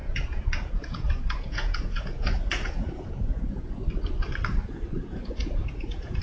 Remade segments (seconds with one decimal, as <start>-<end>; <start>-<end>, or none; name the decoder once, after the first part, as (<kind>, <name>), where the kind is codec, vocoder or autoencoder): 0.0-3.8 (vocoder, Vocos); 4.6-6.2